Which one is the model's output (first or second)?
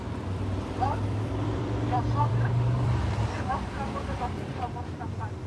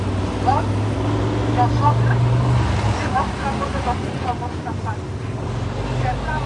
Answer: first